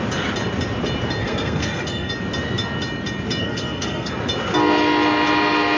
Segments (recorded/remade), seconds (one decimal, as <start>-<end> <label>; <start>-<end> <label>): 0.0-1.2 recorded; 1.2-2.1 remade; 2.1-3.4 recorded; 3.4-4.1 remade; 4.1-5.8 recorded